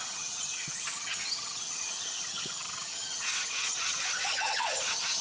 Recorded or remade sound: remade